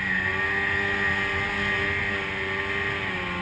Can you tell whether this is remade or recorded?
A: recorded